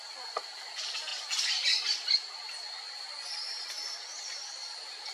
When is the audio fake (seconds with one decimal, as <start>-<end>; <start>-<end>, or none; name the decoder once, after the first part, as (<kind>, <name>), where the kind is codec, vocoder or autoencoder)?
none